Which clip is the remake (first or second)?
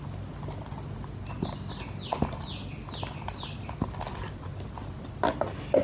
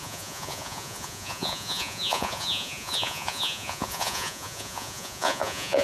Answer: second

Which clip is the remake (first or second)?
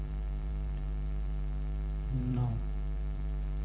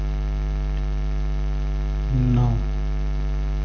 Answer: first